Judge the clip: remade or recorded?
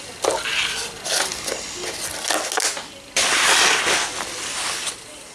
recorded